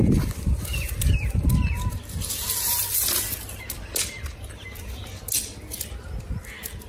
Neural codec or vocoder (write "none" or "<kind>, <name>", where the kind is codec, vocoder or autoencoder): none